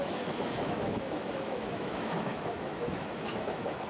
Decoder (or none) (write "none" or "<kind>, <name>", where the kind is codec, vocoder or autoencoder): autoencoder, DAC-VAE